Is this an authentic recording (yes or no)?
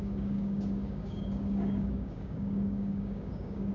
no